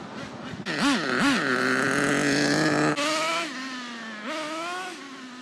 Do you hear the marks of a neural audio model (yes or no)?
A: no